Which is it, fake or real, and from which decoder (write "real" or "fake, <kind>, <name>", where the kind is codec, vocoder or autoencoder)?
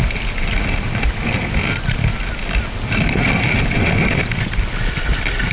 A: real